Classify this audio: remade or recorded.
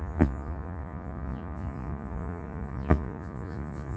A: remade